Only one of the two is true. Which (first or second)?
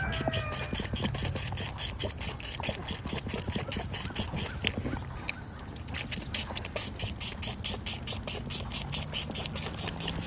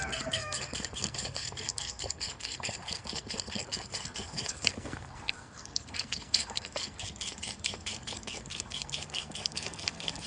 first